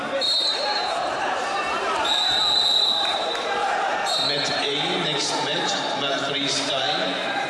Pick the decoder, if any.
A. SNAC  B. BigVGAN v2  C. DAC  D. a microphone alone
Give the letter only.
B